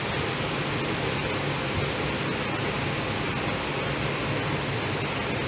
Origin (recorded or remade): recorded